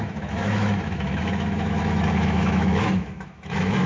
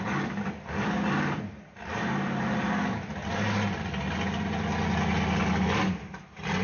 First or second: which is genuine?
second